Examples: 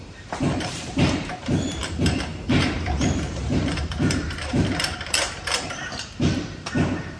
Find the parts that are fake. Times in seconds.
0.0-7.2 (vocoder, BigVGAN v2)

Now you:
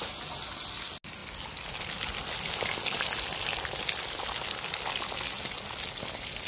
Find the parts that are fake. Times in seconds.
none

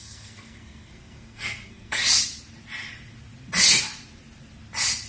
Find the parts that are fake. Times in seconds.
0.0-2.0 (codec, SNAC)

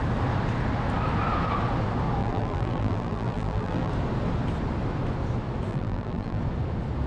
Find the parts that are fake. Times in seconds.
2.2-3.9 (vocoder, BigVGAN v2); 5.7-6.4

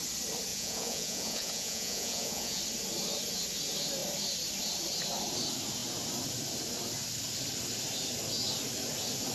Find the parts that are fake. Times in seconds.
0.5-2.6 (vocoder, Vocos)

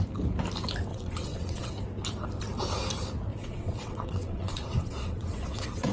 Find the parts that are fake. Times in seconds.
0.9-1.7 (vocoder, WaveNeXt); 3.3-5.9